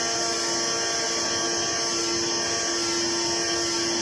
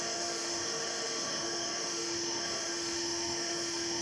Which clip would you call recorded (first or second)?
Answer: first